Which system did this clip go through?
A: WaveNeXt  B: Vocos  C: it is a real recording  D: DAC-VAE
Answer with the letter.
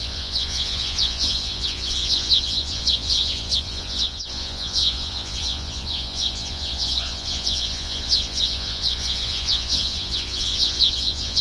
B